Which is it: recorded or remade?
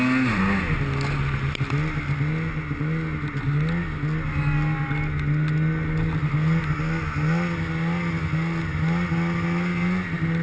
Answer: recorded